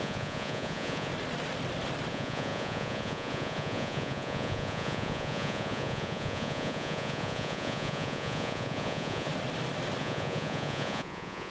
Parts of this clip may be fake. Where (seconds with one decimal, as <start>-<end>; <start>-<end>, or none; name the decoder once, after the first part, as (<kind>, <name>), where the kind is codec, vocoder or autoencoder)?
0.0-1.1 (vocoder, Vocos); 2.1-9.3; 10.0-11.5